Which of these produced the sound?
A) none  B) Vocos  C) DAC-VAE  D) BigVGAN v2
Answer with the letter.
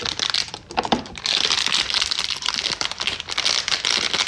A